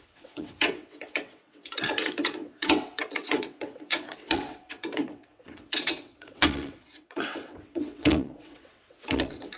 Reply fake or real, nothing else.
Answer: fake